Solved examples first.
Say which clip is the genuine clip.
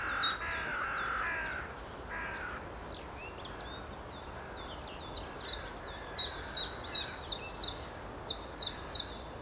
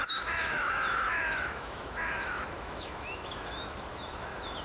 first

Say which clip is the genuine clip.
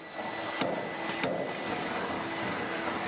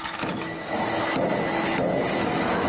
first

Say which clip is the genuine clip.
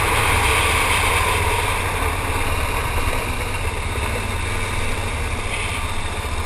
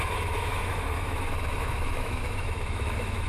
first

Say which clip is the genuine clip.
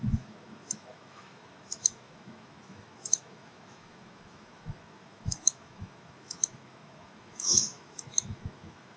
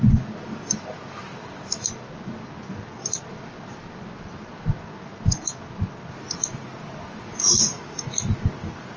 second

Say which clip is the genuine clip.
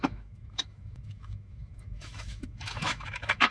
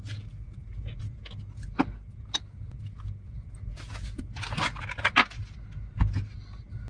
second